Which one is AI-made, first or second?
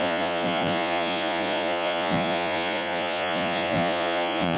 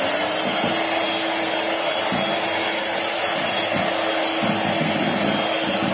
first